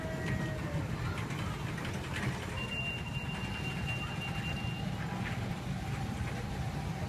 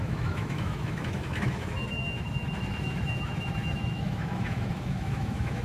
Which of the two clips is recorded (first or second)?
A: first